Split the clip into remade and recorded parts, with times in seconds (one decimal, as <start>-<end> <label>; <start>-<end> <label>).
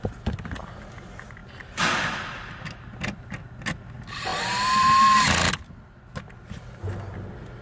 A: 0.0-4.3 recorded; 4.3-5.5 remade; 5.5-7.6 recorded